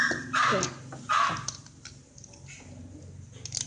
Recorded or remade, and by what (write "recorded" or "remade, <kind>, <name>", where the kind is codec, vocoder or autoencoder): recorded